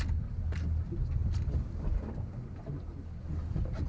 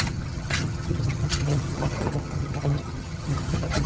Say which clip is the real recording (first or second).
first